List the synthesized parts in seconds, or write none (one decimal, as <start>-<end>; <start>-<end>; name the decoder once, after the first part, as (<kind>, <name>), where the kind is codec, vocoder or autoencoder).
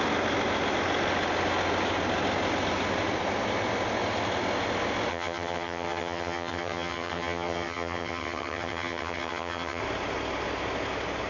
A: 5.1-9.8 (vocoder, HiFi-GAN)